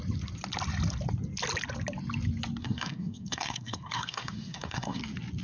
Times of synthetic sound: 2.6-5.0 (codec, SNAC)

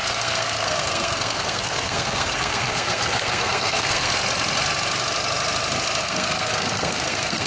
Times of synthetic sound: 0.0-4.1 (codec, SNAC); 6.0-7.5